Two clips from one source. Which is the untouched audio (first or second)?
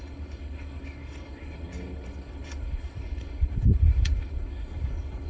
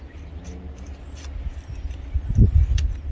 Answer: second